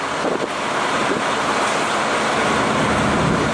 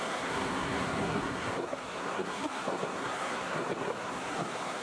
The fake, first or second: second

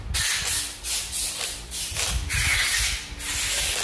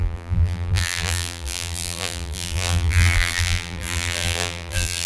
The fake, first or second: second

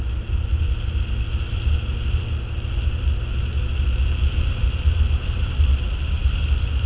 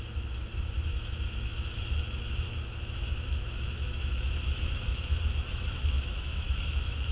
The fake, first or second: second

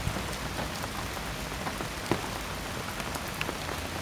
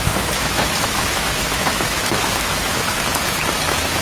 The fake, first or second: second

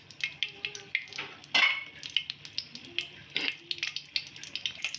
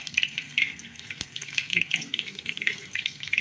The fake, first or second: second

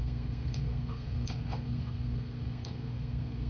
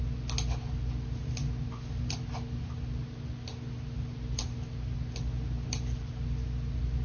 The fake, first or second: first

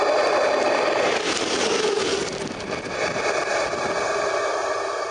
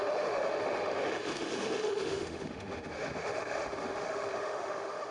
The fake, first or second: second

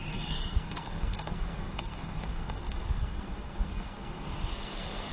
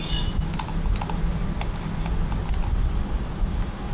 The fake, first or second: first